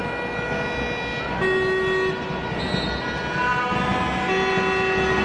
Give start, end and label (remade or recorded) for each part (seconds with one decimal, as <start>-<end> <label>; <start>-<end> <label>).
0.0-5.2 recorded